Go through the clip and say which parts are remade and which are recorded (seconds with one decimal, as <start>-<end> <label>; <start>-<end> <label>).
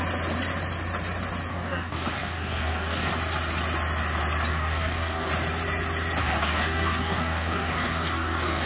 0.0-1.5 recorded; 1.5-3.1 remade; 3.1-4.5 recorded; 4.5-5.3 remade; 5.3-6.2 recorded; 6.2-8.7 remade